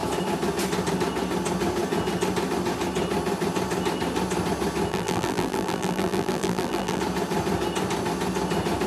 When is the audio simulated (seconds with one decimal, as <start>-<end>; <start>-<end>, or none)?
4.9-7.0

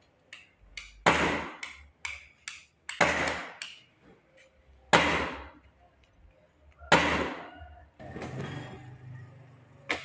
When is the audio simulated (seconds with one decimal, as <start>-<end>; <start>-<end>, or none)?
none

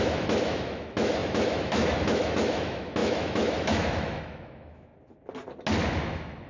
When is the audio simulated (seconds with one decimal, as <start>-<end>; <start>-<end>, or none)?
0.0-4.9; 6.0-6.5

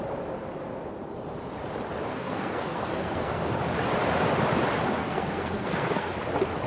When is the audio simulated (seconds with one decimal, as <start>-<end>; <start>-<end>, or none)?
2.1-3.6; 5.0-6.1